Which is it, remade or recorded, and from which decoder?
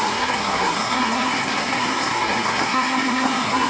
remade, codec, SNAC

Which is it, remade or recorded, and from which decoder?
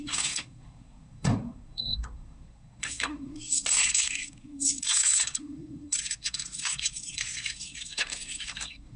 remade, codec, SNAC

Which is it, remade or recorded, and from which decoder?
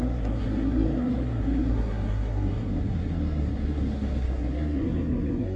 remade, codec, SNAC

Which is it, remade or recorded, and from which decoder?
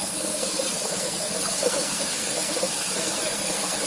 remade, codec, SNAC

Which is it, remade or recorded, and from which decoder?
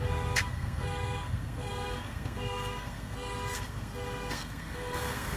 remade, codec, SNAC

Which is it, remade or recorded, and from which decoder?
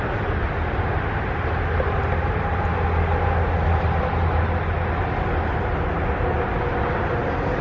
recorded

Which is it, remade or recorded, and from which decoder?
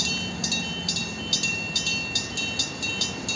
recorded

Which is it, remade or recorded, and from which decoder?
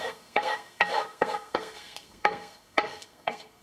remade, codec, SNAC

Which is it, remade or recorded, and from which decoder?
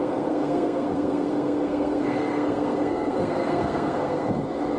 remade, codec, SNAC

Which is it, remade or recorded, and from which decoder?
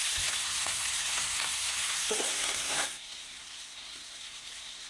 remade, codec, SNAC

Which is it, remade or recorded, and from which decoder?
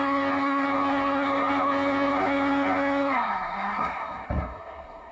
remade, codec, SNAC